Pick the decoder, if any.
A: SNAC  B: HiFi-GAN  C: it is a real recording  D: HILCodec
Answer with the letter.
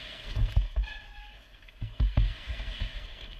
A